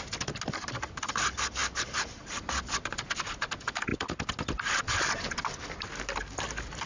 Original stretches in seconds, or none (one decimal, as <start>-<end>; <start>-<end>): 0.0-6.9